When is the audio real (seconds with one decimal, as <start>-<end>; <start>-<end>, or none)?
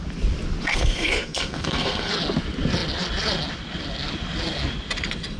0.0-0.7; 2.1-5.4